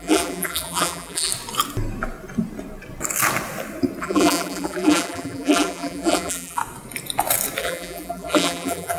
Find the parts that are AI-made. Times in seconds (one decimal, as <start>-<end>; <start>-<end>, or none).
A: 0.0-1.3; 4.0-6.6; 7.6-9.0